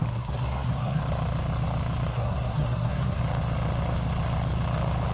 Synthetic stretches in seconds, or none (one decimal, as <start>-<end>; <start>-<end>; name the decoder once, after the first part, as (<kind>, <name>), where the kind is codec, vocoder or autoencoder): 0.0-1.0 (codec, SNAC); 2.1-3.2